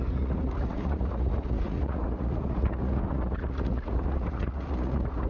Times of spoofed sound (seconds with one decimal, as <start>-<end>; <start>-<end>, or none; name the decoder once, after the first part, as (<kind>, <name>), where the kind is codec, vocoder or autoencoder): 0.0-5.3 (vocoder, Vocos)